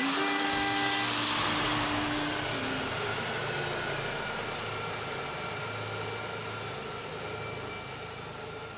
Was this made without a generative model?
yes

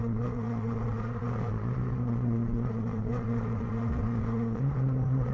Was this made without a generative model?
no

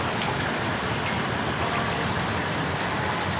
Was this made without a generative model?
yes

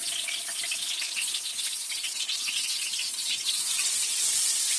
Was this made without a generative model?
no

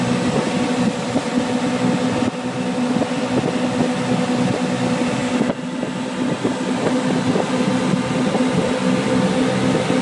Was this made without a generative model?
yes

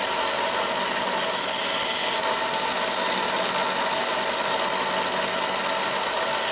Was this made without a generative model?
yes